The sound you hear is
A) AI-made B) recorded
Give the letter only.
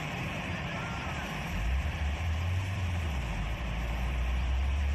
A